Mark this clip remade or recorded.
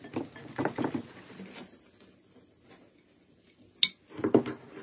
recorded